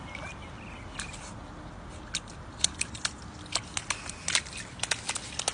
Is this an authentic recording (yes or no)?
yes